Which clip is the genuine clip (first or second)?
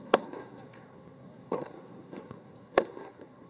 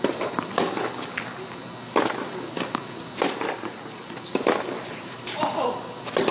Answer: second